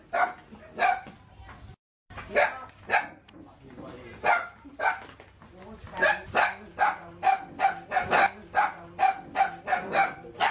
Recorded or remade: recorded